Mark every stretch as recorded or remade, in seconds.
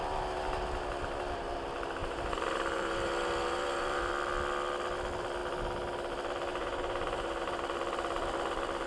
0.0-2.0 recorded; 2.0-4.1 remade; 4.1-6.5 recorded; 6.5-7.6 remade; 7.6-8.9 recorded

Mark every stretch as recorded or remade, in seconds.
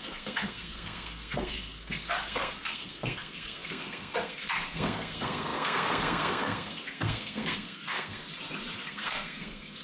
0.0-8.2 remade; 8.2-8.8 recorded; 8.8-9.8 remade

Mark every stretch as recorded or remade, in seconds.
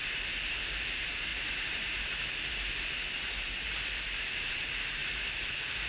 0.0-5.9 remade